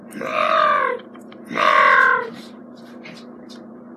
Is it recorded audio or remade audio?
remade